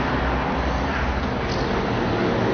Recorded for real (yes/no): yes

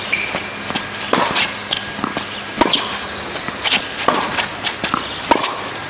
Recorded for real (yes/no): yes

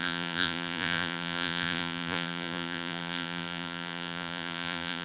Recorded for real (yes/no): no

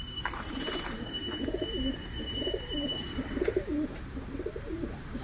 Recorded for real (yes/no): no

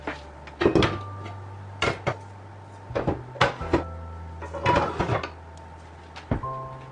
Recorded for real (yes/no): yes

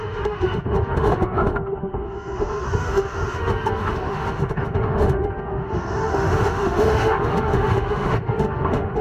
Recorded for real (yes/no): no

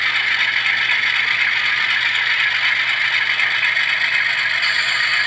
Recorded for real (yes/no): yes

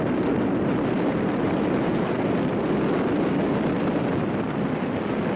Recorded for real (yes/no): yes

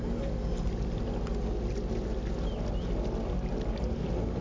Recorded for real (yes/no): yes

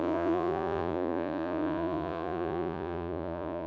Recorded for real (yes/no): no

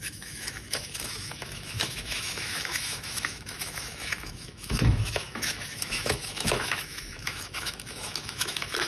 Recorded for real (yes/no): no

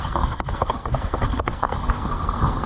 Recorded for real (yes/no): no